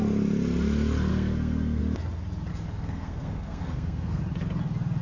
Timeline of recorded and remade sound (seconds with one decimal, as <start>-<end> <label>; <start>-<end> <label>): 0.0-1.1 recorded; 1.1-1.8 remade; 1.8-2.5 recorded; 2.5-4.2 remade; 4.2-5.0 recorded